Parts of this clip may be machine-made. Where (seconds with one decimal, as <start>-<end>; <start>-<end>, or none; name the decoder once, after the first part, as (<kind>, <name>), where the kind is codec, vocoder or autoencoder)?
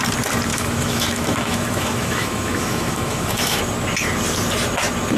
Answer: 0.5-3.6 (autoencoder, DAC-VAE)